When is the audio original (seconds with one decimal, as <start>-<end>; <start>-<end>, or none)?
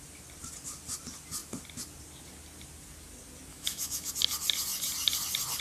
0.0-3.5; 4.1-5.6